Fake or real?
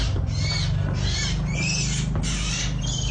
real